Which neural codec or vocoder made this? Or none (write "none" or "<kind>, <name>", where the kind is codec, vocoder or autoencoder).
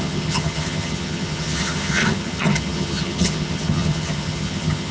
vocoder, HiFi-GAN